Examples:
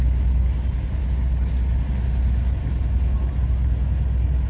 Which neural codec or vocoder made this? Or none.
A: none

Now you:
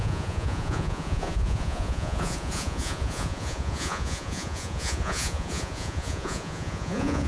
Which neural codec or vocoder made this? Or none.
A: vocoder, Vocos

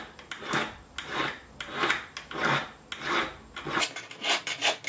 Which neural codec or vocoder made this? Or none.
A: none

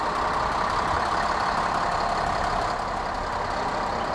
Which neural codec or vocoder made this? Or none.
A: none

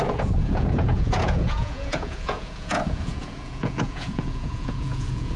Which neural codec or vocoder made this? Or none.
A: vocoder, Vocos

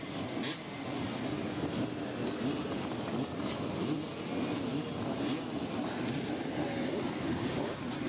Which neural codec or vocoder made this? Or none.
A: none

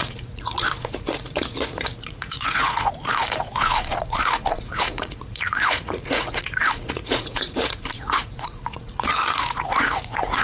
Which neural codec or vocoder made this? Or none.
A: vocoder, Vocos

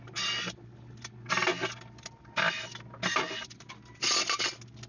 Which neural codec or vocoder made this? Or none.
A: none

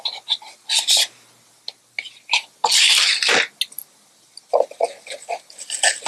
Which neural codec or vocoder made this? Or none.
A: none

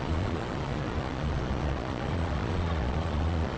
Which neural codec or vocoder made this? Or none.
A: vocoder, Vocos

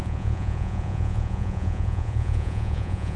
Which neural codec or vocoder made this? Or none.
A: vocoder, Vocos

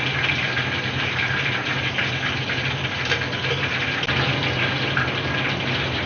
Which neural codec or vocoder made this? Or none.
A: none